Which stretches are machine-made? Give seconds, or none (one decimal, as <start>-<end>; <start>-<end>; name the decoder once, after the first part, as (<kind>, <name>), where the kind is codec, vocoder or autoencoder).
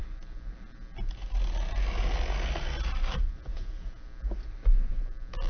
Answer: none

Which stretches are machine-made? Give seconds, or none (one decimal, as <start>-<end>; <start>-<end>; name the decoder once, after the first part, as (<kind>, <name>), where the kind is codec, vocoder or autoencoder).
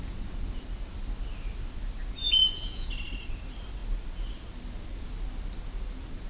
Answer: 2.2-2.9 (vocoder, Vocos)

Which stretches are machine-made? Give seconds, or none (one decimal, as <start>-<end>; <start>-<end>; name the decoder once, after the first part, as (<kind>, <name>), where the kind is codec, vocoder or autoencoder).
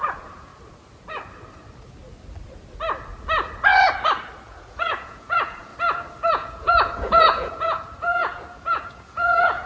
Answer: 0.0-0.5 (vocoder, Vocos); 4.4-5.7; 6.3-9.7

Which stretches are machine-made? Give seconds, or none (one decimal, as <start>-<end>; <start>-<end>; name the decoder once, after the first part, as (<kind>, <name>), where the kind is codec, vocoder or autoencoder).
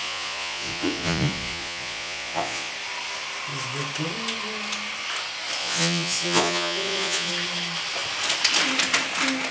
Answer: 0.0-2.7 (vocoder, Vocos); 5.6-7.3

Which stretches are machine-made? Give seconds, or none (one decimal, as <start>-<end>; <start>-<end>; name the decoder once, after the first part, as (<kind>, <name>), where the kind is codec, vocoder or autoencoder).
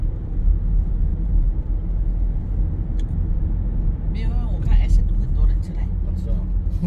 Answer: none